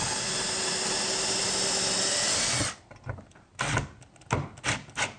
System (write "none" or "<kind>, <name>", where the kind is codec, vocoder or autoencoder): none